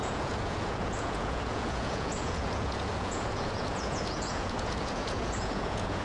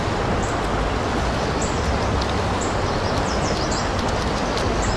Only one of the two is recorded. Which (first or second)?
second